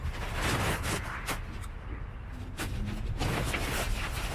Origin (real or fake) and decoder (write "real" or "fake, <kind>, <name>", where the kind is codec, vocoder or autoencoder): real